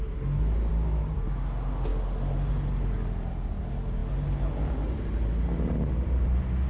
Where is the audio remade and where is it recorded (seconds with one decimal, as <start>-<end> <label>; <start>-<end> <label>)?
0.0-0.7 recorded; 0.7-1.3 remade; 1.3-6.7 recorded